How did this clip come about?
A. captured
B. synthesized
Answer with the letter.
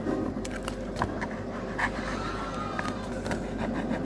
A